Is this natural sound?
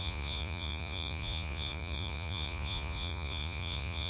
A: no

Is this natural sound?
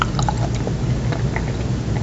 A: yes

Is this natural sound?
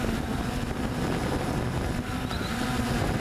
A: no